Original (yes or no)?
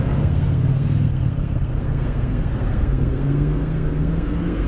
no